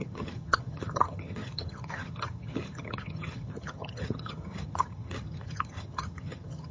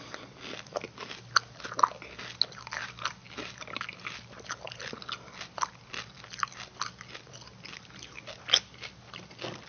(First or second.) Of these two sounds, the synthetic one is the first